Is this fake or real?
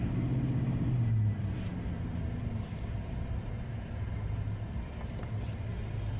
real